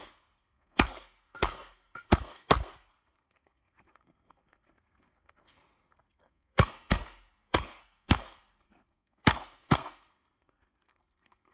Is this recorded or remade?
remade